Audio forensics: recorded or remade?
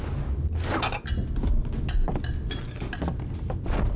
recorded